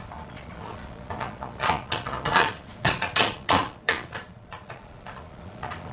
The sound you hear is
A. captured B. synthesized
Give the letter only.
B